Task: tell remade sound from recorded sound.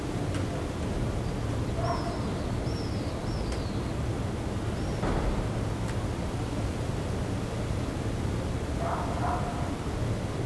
recorded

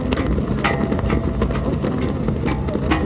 recorded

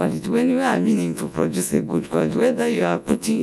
remade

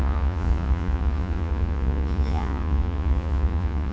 remade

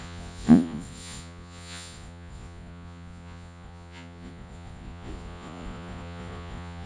remade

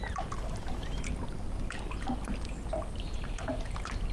recorded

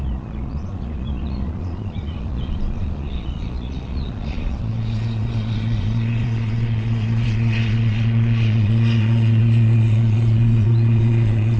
remade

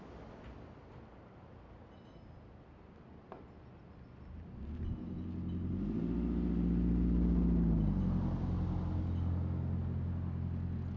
recorded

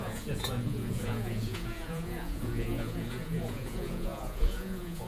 remade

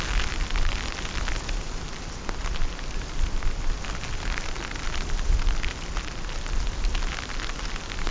recorded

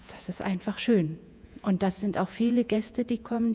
remade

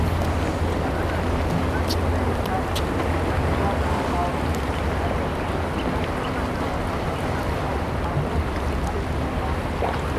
recorded